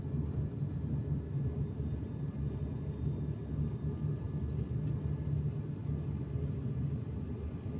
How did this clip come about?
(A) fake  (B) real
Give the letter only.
B